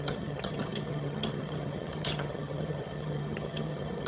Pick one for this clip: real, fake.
fake